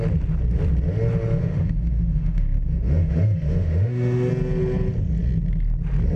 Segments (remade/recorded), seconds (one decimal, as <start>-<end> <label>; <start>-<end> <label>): 0.0-1.4 recorded; 1.4-4.3 remade; 4.3-6.2 recorded